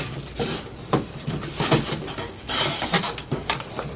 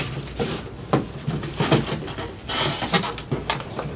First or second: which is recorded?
second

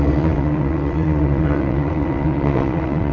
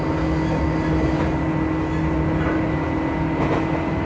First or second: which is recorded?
second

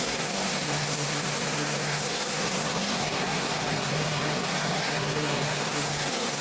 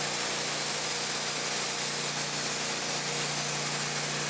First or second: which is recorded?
second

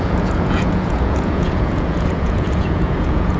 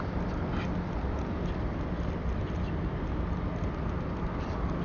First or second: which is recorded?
second